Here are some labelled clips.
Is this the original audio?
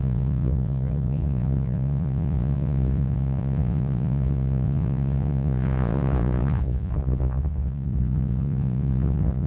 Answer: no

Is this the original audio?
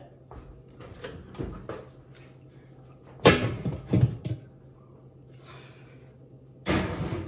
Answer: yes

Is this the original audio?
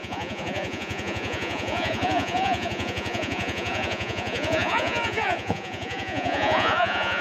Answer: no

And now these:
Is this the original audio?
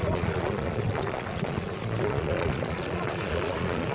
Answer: no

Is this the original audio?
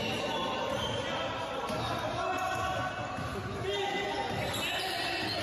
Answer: yes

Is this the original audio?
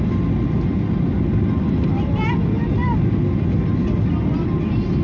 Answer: yes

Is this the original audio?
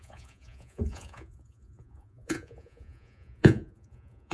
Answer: no